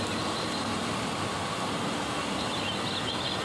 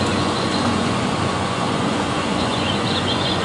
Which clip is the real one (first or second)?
first